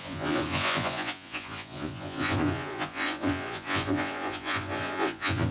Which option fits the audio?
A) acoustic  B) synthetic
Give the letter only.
B